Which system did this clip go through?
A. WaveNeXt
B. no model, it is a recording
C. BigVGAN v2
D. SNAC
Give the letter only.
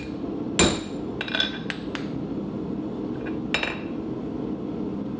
B